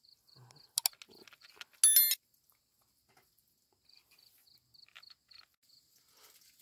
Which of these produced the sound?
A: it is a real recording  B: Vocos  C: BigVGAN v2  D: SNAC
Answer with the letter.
A